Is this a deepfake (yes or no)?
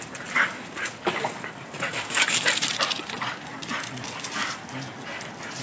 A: no